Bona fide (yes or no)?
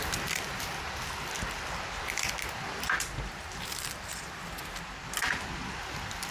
no